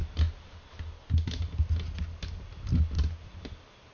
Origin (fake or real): real